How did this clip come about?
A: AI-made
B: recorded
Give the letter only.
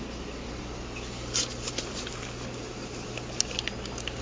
B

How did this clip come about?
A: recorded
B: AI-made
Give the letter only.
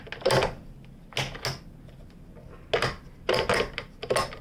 A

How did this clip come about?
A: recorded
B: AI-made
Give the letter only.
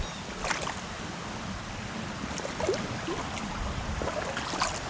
A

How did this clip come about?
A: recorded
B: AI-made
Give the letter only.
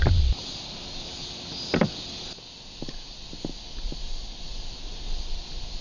A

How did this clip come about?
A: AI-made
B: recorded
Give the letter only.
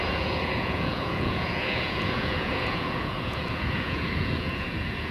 A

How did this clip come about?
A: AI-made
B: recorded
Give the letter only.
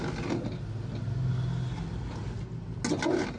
B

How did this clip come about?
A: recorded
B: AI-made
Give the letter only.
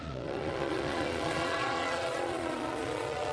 B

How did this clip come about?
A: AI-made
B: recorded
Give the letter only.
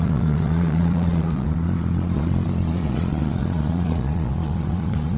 A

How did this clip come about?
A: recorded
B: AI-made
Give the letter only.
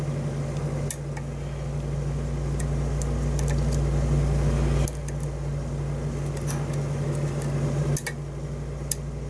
A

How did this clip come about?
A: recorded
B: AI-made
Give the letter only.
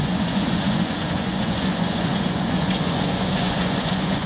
B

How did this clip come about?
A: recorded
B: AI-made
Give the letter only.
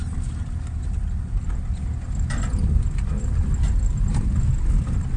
A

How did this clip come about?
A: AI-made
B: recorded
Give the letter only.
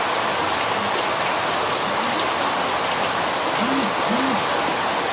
B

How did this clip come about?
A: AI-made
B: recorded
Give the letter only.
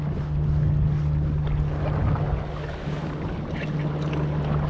B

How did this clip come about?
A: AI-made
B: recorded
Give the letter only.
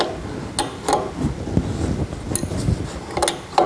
B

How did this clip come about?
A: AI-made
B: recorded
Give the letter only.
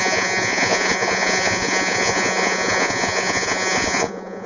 A